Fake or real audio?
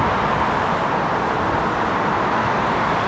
real